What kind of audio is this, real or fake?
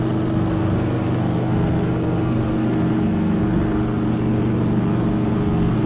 fake